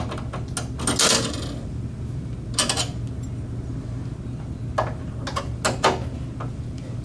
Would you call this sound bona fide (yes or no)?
yes